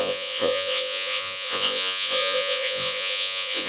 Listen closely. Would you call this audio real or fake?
fake